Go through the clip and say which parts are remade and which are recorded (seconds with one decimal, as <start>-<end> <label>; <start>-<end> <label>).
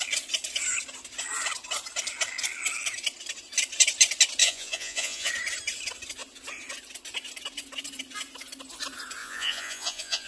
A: 0.0-4.4 recorded; 4.4-5.3 remade; 5.3-9.2 recorded; 9.2-10.3 remade